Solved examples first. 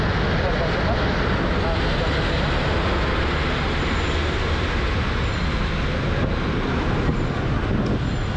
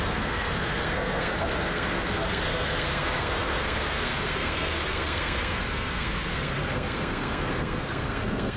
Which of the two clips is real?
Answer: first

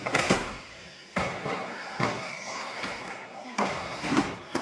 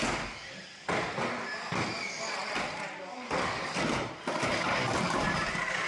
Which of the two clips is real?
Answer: second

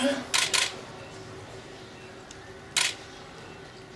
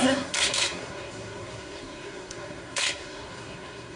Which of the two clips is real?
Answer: first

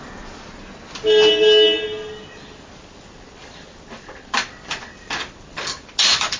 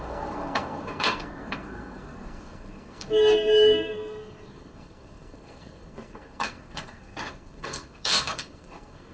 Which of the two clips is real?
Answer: first